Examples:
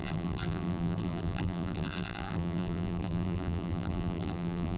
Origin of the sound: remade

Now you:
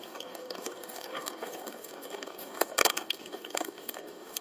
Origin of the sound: remade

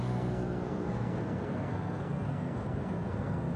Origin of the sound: remade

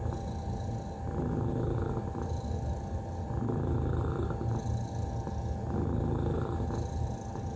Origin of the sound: recorded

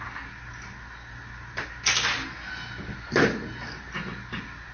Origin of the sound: recorded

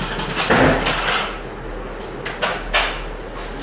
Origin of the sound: recorded